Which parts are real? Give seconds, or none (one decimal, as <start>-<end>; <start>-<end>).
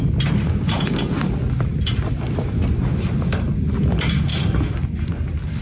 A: 0.0-5.6